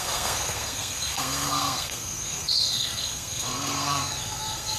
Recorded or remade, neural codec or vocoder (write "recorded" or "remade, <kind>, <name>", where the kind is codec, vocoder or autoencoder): remade, codec, SNAC